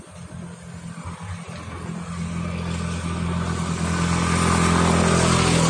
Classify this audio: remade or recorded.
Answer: recorded